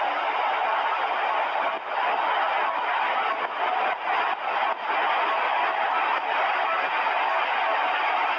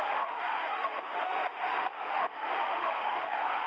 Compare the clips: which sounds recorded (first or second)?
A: first